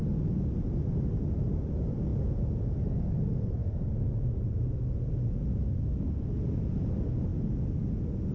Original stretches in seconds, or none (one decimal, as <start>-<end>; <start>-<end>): 0.0-2.1; 2.6-8.3